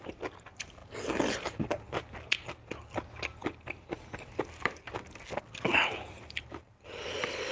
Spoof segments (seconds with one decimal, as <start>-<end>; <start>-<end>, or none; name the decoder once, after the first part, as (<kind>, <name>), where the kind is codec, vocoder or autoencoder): none